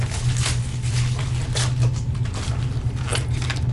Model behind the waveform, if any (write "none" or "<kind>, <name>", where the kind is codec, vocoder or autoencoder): none